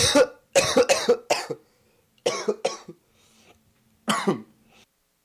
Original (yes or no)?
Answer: yes